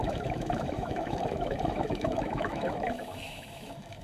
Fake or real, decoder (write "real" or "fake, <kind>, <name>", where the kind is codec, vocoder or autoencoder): fake, autoencoder, DAC-VAE